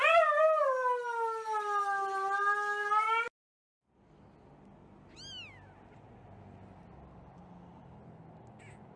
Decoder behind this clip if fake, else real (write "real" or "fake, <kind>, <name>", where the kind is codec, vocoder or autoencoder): real